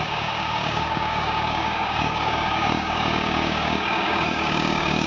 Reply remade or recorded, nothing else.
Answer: remade